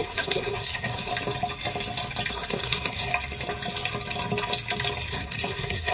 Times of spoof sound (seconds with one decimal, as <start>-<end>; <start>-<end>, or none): 0.0-1.1; 2.3-3.1; 5.1-5.9